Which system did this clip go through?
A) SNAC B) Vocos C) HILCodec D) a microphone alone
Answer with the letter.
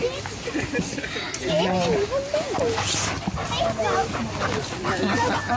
D